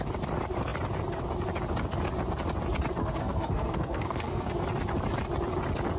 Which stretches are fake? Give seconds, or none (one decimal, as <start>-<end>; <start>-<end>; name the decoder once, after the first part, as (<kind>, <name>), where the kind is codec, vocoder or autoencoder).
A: 3.0-4.5 (codec, SNAC)